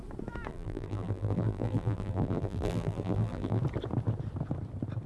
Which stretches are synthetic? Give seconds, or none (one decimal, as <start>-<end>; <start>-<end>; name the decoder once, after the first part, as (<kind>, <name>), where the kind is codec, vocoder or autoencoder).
0.5-3.6 (vocoder, BigVGAN v2)